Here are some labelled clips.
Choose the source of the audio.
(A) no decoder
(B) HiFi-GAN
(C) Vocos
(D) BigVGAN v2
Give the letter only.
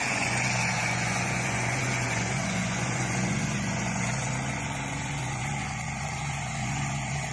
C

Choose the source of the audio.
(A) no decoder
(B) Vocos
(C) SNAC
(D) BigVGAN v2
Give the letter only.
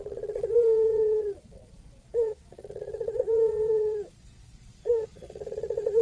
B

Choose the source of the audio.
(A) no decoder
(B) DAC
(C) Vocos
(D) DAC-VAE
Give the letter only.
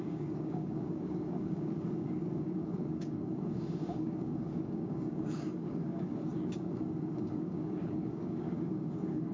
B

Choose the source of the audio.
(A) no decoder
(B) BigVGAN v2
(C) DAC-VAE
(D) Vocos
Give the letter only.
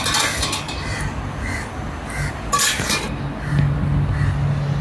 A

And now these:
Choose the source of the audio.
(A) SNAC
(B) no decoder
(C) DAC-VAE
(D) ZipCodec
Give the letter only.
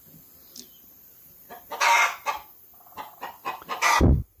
B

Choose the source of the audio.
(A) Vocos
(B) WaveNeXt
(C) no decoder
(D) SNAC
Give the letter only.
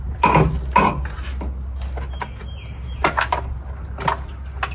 C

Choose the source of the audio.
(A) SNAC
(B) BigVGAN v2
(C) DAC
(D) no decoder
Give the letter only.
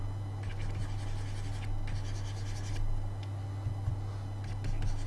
D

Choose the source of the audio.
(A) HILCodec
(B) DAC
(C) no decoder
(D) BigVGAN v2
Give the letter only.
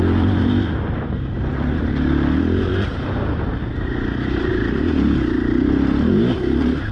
C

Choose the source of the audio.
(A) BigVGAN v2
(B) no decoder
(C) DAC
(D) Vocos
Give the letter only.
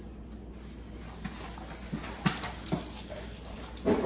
B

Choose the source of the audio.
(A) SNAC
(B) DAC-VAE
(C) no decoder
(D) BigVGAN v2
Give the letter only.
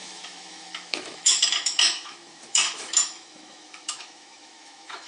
B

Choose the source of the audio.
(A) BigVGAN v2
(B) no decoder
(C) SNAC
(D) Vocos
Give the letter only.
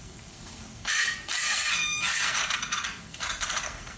C